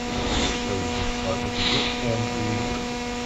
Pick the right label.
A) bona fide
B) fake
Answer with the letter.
B